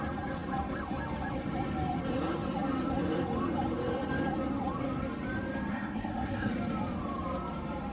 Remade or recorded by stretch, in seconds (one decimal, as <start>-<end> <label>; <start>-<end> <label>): 0.0-5.7 recorded; 5.7-6.5 remade; 6.5-7.9 recorded

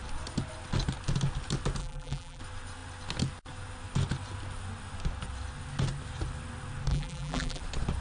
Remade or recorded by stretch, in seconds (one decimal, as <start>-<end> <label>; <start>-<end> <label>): 0.0-1.8 recorded; 1.8-2.4 remade; 2.4-6.9 recorded; 6.9-7.6 remade; 7.6-8.0 recorded

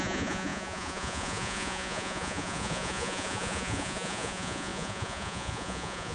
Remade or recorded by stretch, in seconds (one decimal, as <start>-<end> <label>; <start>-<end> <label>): 0.0-6.1 remade

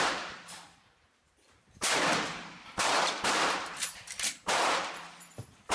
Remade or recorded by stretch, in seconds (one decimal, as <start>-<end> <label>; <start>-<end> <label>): 0.0-5.7 remade